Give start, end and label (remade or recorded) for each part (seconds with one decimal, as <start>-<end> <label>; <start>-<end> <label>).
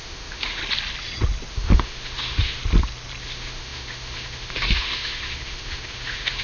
0.0-0.6 remade; 0.6-1.5 recorded; 1.5-2.6 remade; 2.6-3.2 recorded; 3.2-6.4 remade